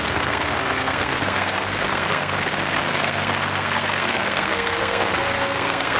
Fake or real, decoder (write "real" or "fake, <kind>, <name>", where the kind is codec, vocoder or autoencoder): fake, codec, SNAC